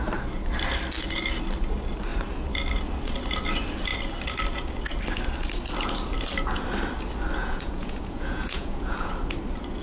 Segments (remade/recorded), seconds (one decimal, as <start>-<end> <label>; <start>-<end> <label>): 0.0-7.4 recorded; 7.4-9.1 remade; 9.1-9.8 recorded